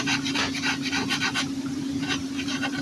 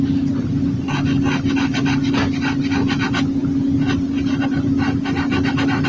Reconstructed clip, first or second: first